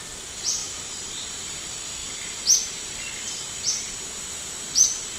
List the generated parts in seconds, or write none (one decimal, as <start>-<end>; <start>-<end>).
none